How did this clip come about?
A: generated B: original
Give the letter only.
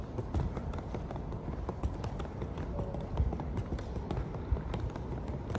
B